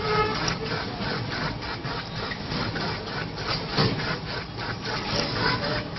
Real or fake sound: real